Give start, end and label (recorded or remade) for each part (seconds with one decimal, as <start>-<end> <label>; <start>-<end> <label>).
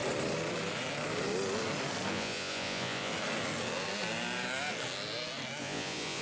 0.0-2.1 recorded; 2.1-3.1 remade; 3.1-5.6 recorded; 5.6-6.2 remade